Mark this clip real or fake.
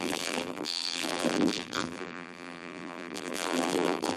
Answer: fake